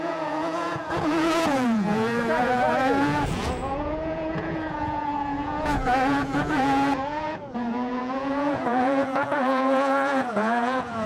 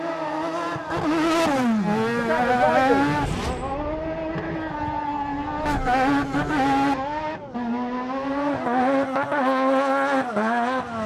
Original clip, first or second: second